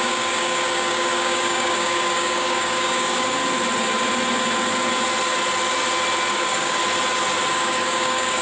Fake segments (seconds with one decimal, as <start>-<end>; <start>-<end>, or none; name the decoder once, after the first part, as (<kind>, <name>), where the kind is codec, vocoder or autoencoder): 0.0-3.4 (codec, DAC); 6.3-6.8; 7.5-8.4